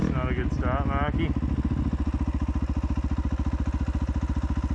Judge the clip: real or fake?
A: real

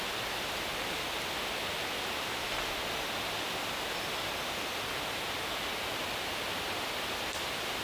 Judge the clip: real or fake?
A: real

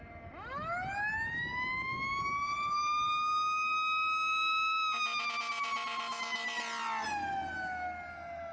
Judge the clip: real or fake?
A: real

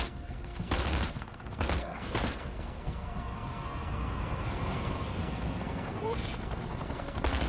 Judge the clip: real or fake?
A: fake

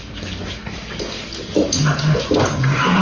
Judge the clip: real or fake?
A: fake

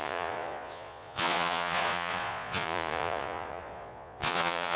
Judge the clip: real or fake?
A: fake